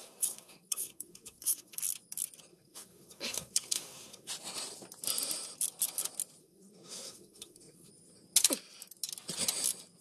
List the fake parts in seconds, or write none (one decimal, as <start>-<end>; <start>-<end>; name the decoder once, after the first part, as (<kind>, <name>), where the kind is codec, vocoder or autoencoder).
0.0-1.8 (codec, SNAC); 2.5-4.3; 6.4-7.9